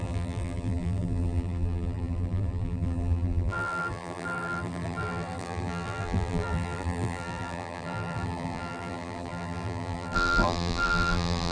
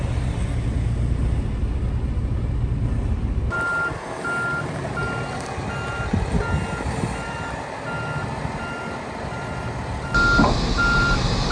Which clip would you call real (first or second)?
second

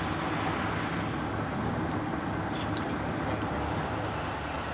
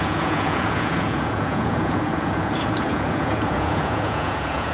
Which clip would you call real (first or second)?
first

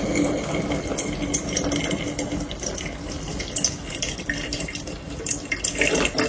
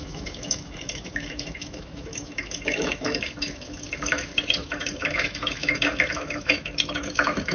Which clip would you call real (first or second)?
first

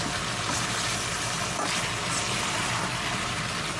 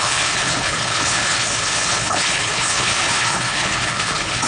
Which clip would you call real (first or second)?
first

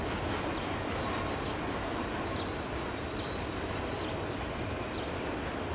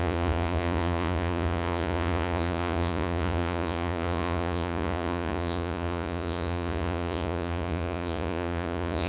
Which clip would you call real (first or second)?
first